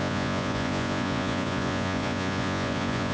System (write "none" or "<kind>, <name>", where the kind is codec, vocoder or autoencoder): vocoder, Vocos